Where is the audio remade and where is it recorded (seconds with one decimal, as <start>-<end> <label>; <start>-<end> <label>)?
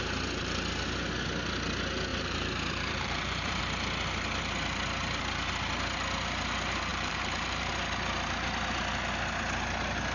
0.0-2.1 recorded; 2.1-3.6 remade; 3.6-6.9 recorded; 6.9-7.7 remade; 7.7-10.1 recorded